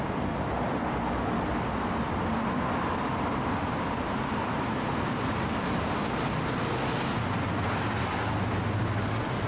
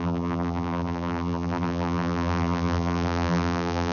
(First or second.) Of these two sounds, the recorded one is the first